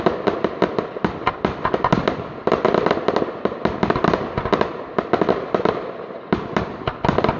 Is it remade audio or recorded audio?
recorded